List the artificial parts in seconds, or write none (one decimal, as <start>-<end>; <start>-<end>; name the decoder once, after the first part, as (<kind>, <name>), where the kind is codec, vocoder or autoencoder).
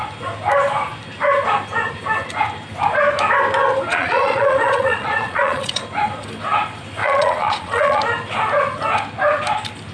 3.9-5.8 (vocoder, Vocos); 7.0-8.0